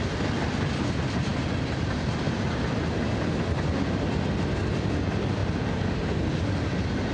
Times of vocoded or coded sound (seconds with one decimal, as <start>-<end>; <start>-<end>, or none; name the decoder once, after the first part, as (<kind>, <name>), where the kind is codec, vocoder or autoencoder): none